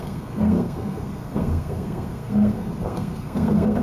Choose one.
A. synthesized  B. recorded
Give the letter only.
A